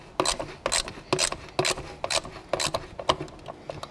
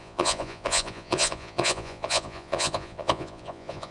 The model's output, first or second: second